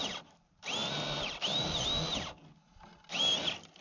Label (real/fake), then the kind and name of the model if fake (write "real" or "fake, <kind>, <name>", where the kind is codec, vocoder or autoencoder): real